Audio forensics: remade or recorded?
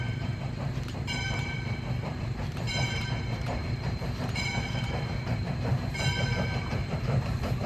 remade